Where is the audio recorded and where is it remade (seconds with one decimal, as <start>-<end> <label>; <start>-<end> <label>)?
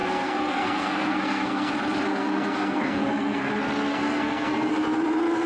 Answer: 0.0-1.7 remade; 1.7-2.1 recorded; 2.1-3.5 remade; 3.5-3.9 recorded; 3.9-4.7 remade; 4.7-5.5 recorded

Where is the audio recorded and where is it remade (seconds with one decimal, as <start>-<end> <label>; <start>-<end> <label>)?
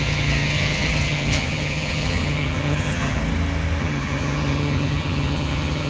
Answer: 0.0-3.2 remade; 3.2-3.8 recorded; 3.8-5.9 remade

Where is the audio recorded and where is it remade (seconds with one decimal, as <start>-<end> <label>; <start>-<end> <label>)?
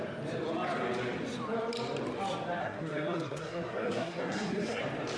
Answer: 0.0-2.6 recorded; 2.6-4.8 remade; 4.8-5.2 recorded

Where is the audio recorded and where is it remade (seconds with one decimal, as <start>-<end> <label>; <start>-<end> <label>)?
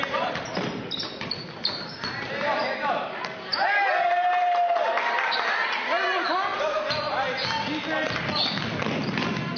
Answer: 0.0-9.6 recorded